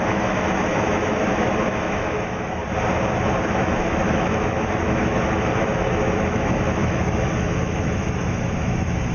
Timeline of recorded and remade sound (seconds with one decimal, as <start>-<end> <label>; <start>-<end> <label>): 0.0-2.6 remade; 2.6-3.4 recorded; 3.4-9.1 remade